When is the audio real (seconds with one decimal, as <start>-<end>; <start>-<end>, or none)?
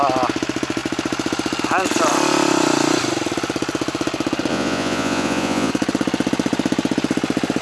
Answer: 0.0-4.5; 5.7-7.6